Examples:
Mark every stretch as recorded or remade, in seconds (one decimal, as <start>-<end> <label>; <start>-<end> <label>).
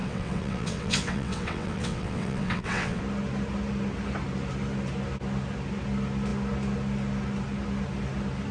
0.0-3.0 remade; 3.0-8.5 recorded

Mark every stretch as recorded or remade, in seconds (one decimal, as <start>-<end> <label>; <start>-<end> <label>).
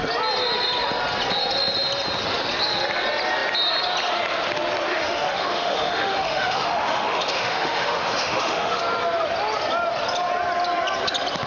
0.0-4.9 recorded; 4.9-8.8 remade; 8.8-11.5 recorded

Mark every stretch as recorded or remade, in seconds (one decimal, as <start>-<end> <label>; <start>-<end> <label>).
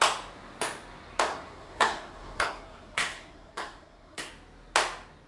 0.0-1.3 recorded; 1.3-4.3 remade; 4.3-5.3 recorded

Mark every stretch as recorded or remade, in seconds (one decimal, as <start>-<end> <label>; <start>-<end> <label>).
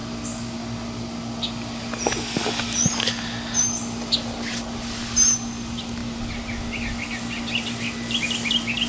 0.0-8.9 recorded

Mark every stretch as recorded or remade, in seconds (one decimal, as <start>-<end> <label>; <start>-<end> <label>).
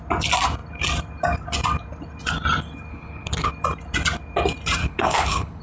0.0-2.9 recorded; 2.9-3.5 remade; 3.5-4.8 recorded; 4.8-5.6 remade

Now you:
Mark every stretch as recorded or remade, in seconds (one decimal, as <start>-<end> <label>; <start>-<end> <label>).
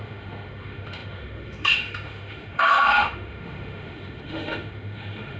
0.0-5.4 remade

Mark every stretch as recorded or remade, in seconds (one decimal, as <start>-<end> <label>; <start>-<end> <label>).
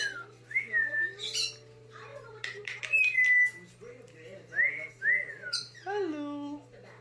0.0-7.0 recorded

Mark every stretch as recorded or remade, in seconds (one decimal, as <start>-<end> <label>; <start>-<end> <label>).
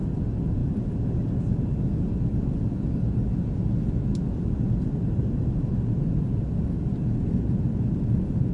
0.0-8.5 recorded